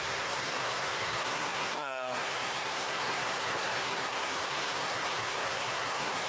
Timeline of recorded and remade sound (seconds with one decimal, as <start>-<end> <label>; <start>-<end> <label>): 0.0-6.3 remade